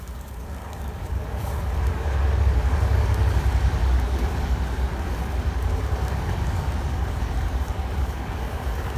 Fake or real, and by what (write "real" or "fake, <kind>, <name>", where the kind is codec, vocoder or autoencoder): fake, codec, DAC